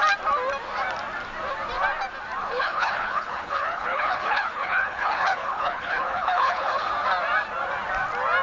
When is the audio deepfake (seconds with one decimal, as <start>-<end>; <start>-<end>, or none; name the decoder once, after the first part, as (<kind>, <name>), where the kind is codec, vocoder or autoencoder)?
2.4-6.9 (codec, HILCodec)